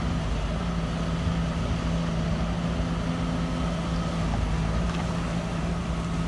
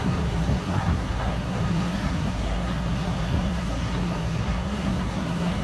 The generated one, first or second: second